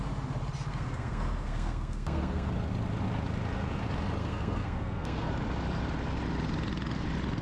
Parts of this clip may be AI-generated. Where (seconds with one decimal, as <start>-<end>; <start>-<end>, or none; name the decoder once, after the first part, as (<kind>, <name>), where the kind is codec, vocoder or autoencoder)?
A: 0.7-2.5 (codec, SNAC); 4.2-5.3